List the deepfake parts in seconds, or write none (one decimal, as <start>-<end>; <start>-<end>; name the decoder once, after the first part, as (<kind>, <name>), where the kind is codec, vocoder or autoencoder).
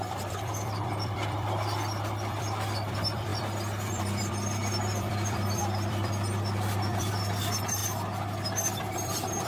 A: 0.0-7.8 (vocoder, BigVGAN v2); 8.8-9.5